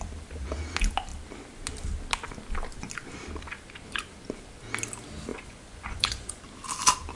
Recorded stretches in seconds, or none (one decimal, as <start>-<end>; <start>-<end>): 0.0-5.3; 6.4-7.2